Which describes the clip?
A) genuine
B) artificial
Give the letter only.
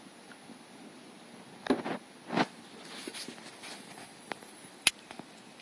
A